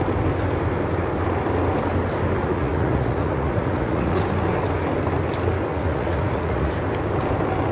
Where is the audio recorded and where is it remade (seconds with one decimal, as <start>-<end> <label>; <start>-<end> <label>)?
0.0-2.4 recorded; 2.4-4.2 remade; 4.2-5.7 recorded; 5.7-6.7 remade; 6.7-7.7 recorded